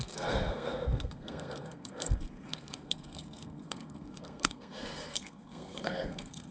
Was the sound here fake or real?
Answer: fake